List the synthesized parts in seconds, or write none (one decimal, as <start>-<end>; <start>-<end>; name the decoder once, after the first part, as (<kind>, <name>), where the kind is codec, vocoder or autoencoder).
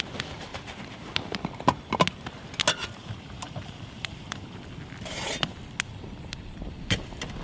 0.5-1.4 (vocoder, BigVGAN v2); 3.0-4.6